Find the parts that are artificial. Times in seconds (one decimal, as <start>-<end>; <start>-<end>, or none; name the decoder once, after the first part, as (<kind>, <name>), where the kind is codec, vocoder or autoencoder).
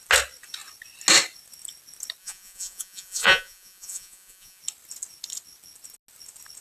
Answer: 2.2-4.6 (vocoder, Vocos)